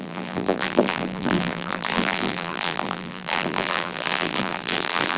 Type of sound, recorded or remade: remade